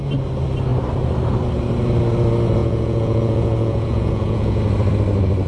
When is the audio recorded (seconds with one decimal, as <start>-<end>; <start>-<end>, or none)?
0.0-2.6; 4.6-5.5